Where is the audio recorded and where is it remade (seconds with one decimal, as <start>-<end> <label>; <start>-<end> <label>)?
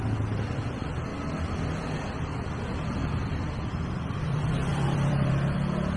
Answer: 0.0-4.7 recorded; 4.7-5.3 remade; 5.3-6.0 recorded